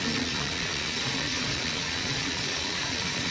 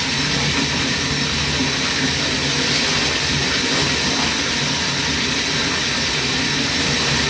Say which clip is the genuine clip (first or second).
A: second